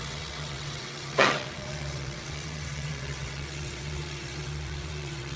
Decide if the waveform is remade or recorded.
remade